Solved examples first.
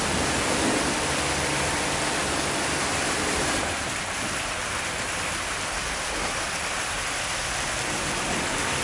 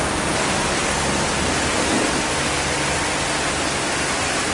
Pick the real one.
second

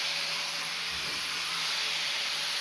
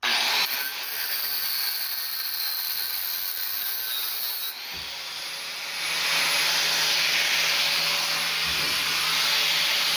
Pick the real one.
second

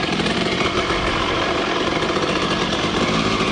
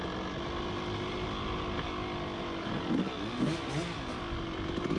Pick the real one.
second